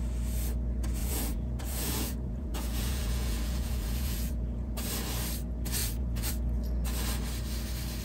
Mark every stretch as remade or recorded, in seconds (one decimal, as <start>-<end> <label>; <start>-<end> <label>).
0.0-1.0 recorded; 1.0-4.8 remade; 4.8-5.8 recorded; 5.8-6.3 remade; 6.3-8.0 recorded